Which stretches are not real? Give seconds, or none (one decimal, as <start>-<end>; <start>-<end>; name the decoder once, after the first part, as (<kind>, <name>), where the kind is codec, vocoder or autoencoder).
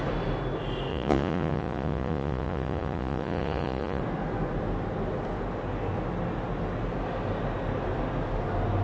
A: 0.9-4.0 (vocoder, Vocos)